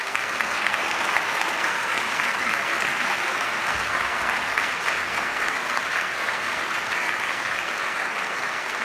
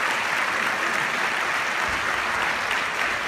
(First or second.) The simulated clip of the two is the first